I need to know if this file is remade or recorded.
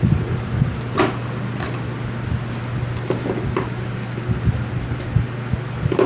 recorded